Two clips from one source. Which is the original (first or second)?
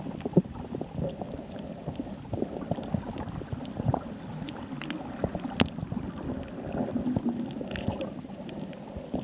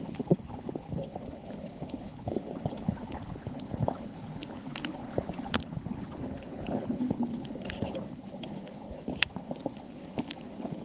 first